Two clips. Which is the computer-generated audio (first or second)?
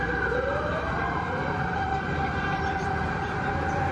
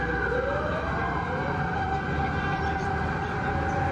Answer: first